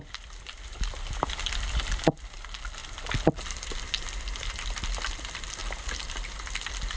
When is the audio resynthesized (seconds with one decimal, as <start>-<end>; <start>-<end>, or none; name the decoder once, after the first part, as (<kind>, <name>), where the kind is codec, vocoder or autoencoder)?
none